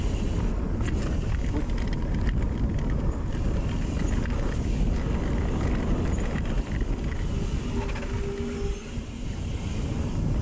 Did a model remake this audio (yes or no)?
no